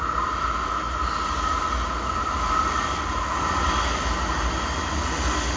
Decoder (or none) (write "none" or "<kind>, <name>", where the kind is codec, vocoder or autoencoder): none